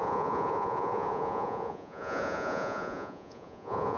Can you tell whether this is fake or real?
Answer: fake